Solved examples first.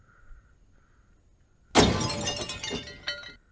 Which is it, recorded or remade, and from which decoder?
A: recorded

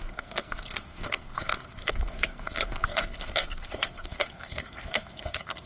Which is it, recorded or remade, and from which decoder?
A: remade, codec, SNAC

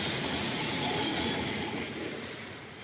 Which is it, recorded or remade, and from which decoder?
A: remade, vocoder, Vocos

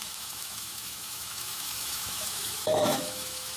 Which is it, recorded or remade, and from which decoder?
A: remade, autoencoder, DAC-VAE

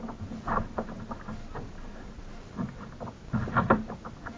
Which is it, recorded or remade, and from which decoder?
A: recorded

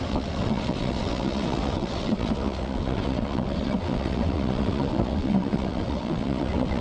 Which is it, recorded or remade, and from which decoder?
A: remade, vocoder, WaveNeXt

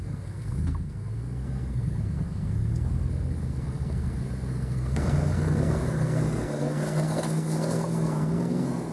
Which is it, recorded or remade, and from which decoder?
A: remade, codec, SNAC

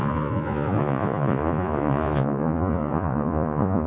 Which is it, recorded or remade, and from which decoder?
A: remade, vocoder, Vocos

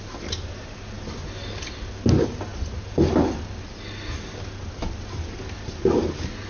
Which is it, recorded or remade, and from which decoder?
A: recorded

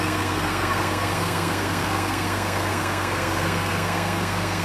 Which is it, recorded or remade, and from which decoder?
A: remade, codec, SNAC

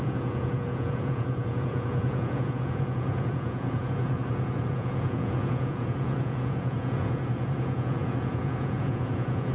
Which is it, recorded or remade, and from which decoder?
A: remade, vocoder, Vocos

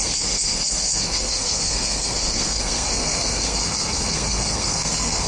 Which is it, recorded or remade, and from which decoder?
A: remade, codec, SNAC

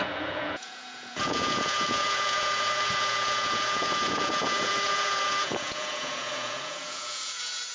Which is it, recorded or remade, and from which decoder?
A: remade, vocoder, Vocos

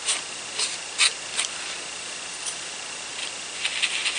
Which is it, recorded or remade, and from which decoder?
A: recorded